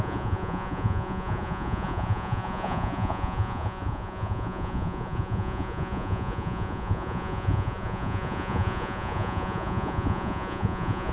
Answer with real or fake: fake